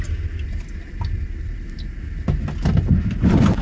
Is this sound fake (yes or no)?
no